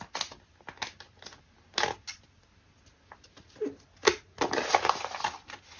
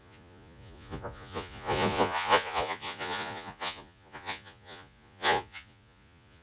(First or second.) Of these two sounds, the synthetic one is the second